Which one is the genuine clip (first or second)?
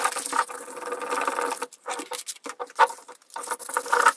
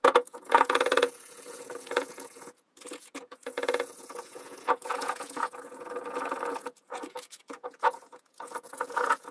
first